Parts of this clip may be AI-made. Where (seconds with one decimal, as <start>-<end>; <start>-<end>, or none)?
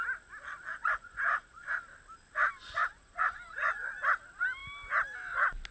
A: 0.7-1.8; 2.6-3.9